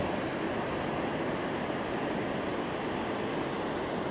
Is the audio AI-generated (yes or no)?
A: no